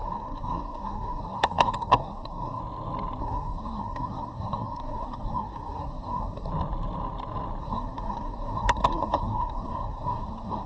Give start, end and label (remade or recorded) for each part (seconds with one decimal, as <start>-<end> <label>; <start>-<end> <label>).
0.0-2.6 remade; 2.6-3.2 recorded; 3.2-6.5 remade; 6.5-7.6 recorded; 7.6-10.7 remade